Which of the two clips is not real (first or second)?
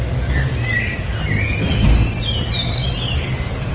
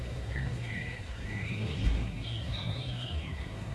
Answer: second